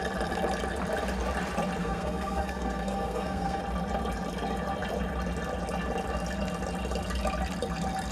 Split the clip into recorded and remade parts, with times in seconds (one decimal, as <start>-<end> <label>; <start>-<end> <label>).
0.0-1.8 recorded; 1.8-3.6 remade; 3.6-8.1 recorded